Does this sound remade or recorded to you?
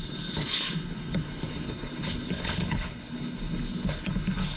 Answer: remade